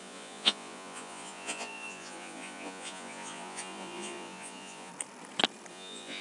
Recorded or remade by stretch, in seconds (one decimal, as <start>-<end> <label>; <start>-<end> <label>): 0.0-4.9 remade; 4.9-5.7 recorded; 5.7-6.2 remade

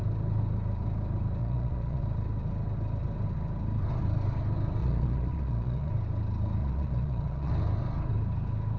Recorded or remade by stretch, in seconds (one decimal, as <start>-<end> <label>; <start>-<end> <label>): 0.0-1.4 recorded; 1.4-2.0 remade; 2.0-4.8 recorded; 4.8-5.9 remade; 5.9-6.6 recorded; 6.6-7.5 remade; 7.5-8.8 recorded

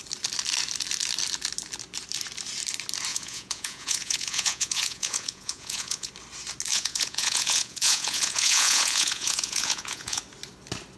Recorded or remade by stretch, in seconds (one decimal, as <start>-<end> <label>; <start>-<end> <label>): 0.0-3.1 recorded; 3.1-6.1 remade; 6.1-6.7 recorded; 6.7-10.2 remade; 10.2-11.0 recorded

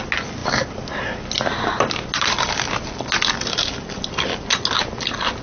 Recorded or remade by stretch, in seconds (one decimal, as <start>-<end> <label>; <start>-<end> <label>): 0.0-5.4 recorded

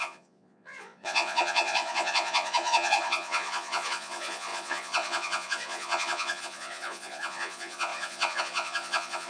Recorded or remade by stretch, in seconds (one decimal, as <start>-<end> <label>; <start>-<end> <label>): 0.0-9.3 remade

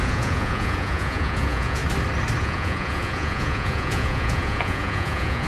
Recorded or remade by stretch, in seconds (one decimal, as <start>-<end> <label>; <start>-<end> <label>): 0.0-1.8 remade; 1.8-2.4 recorded; 2.4-5.5 remade

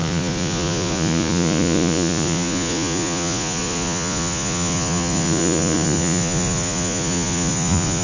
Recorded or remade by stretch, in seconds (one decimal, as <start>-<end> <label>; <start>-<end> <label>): 0.0-8.0 remade